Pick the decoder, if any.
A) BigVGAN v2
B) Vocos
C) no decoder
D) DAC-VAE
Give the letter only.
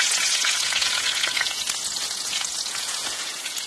B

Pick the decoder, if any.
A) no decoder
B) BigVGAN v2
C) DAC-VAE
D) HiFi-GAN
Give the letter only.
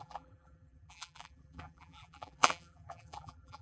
B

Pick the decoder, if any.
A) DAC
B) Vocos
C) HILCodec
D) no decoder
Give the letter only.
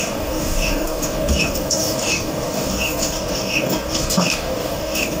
A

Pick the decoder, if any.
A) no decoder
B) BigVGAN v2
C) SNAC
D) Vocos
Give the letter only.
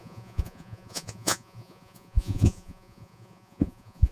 D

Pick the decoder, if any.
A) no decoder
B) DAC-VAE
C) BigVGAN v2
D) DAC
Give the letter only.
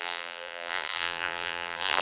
C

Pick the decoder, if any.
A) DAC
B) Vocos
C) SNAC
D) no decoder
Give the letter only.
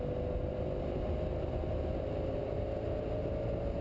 D